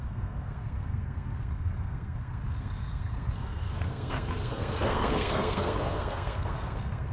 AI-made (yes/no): yes